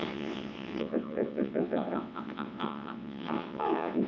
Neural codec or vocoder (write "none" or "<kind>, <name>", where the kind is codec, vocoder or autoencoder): vocoder, WaveNeXt